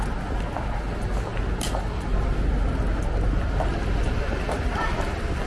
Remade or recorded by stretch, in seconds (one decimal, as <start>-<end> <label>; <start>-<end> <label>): 0.0-5.5 recorded